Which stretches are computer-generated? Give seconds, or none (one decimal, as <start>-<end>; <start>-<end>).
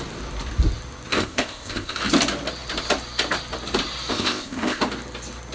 1.1-2.0; 4.1-4.8